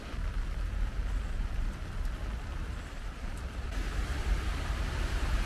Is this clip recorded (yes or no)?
no